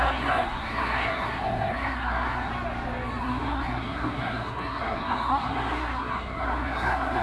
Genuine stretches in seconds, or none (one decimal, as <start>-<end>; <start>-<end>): 2.5-3.2